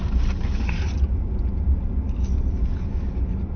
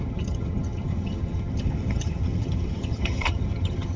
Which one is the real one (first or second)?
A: first